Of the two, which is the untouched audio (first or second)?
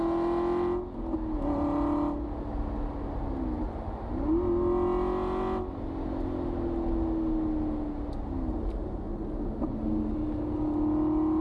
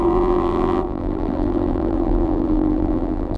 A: first